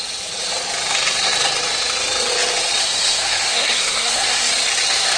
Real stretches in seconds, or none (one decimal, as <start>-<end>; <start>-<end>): 0.0-2.8; 4.5-5.2